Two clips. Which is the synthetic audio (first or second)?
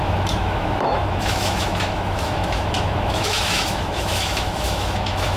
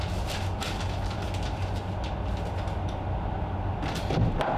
first